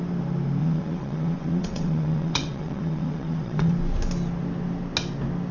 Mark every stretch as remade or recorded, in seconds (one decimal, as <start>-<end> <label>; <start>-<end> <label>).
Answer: 0.0-0.6 recorded; 0.6-3.7 remade; 3.7-5.5 recorded